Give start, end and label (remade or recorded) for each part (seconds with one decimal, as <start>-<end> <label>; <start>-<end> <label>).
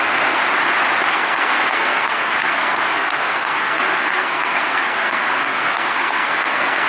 0.0-0.4 remade; 0.4-1.1 recorded; 1.1-6.9 remade